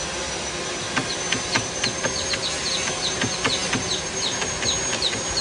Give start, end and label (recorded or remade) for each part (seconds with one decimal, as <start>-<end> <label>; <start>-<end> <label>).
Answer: 0.0-5.4 recorded